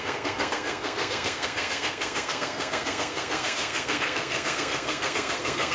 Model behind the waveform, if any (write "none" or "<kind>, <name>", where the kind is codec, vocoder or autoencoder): codec, SNAC